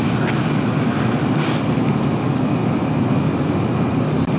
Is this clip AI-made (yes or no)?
no